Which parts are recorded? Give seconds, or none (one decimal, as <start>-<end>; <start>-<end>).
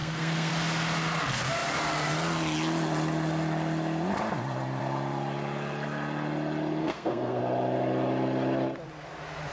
0.5-6.8; 7.4-9.5